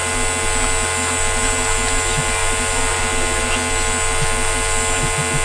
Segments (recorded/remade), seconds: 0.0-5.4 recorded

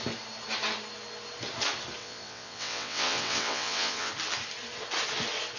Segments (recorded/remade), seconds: 0.0-2.0 recorded; 2.0-4.1 remade; 4.1-5.6 recorded

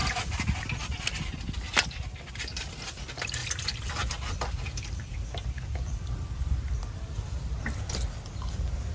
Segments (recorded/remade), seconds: 0.0-3.4 recorded; 3.4-7.8 remade; 7.8-8.9 recorded

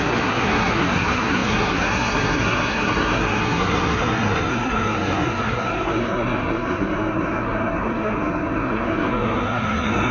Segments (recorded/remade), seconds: 0.0-10.1 remade

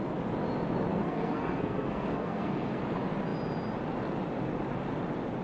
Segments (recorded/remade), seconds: 0.0-0.9 recorded; 0.9-2.8 remade; 2.8-5.4 recorded

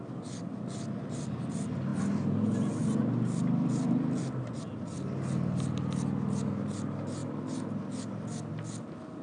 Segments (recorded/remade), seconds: 0.0-9.2 recorded